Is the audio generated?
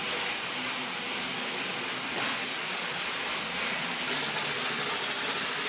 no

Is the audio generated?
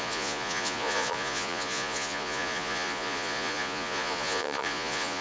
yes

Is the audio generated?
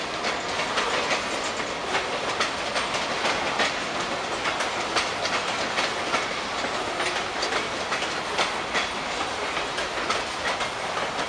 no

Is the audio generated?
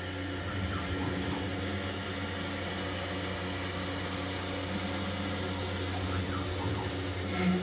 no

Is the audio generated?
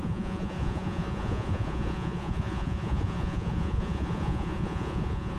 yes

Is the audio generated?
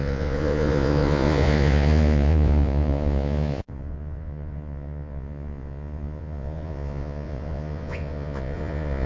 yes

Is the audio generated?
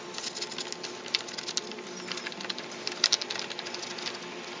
no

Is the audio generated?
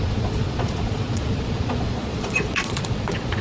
yes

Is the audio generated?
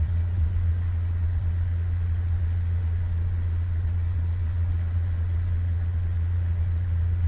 yes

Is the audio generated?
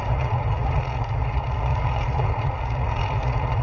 yes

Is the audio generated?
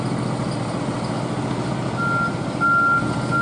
no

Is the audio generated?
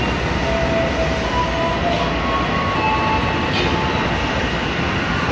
no